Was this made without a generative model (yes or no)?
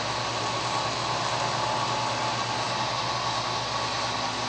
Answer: yes